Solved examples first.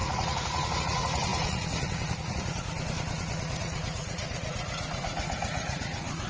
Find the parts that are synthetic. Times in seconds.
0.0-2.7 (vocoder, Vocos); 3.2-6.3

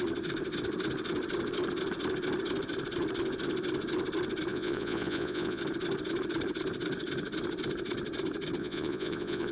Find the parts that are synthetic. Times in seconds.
4.5-5.6 (vocoder, Vocos); 8.6-9.5

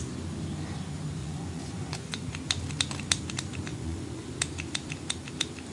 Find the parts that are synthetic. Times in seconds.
1.2-2.3 (vocoder, Vocos); 3.7-4.4

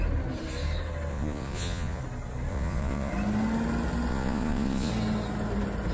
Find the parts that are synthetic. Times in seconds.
1.1-2.0 (vocoder, Vocos); 2.5-3.1; 4.1-4.9